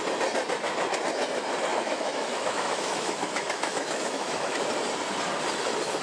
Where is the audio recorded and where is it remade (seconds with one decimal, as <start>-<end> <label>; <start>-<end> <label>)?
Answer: 0.0-1.7 recorded; 1.7-4.6 remade; 4.6-6.0 recorded